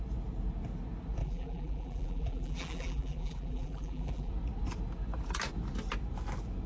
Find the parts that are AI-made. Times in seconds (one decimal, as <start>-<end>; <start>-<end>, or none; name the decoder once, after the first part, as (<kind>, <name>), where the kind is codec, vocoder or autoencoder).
1.2-4.3 (vocoder, BigVGAN v2)